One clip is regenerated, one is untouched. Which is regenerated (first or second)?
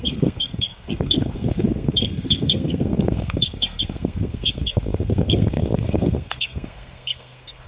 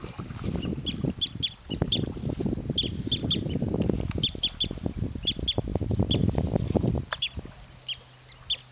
first